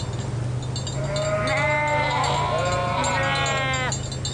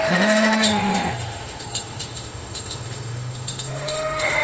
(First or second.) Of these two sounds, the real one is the first